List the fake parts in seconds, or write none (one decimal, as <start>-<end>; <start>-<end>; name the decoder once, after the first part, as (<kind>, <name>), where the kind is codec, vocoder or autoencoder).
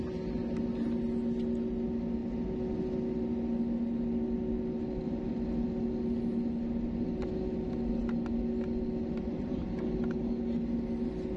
none